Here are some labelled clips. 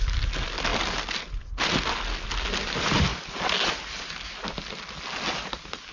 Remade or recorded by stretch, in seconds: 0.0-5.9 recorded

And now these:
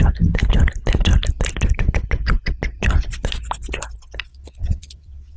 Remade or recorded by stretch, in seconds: 0.0-4.3 recorded; 4.3-5.4 remade

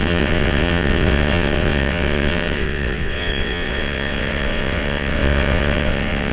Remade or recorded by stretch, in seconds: 0.0-6.3 remade